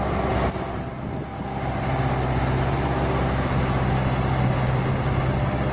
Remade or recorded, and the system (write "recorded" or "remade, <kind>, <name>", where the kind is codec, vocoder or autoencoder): recorded